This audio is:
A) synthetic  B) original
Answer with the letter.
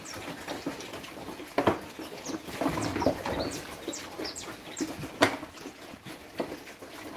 B